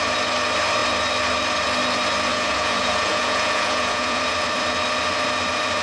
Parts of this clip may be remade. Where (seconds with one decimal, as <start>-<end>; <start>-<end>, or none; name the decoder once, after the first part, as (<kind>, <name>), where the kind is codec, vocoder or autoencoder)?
2.3-4.2 (vocoder, Vocos)

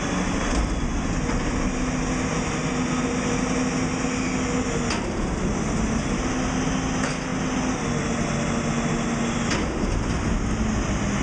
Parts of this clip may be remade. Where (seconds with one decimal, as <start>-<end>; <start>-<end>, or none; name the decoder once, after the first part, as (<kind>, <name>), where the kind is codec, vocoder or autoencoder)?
none

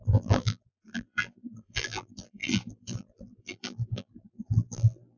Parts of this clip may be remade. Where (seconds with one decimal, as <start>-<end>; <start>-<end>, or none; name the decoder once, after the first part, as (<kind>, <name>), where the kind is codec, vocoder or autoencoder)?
0.0-5.2 (vocoder, BigVGAN v2)

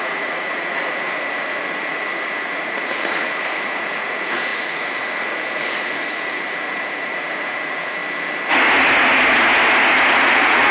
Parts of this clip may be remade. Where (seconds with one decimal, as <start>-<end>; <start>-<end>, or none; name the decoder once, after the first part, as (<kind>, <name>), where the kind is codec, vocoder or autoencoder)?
0.0-8.0 (vocoder, Vocos); 10.1-10.7

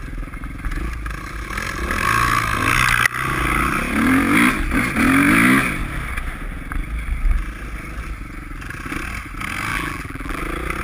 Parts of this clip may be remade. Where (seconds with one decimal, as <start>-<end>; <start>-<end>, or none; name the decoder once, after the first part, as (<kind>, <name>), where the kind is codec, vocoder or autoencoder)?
9.7-10.4 (vocoder, BigVGAN v2)

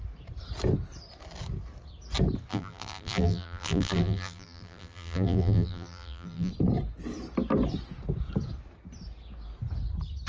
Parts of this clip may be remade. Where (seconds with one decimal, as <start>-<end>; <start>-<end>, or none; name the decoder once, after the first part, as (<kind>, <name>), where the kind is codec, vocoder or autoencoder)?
2.5-6.5 (vocoder, BigVGAN v2)

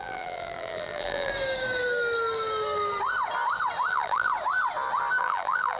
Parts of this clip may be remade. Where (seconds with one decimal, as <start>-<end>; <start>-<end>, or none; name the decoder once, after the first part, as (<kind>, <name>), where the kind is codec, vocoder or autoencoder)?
0.0-1.3 (vocoder, BigVGAN v2); 3.9-4.3; 5.2-5.8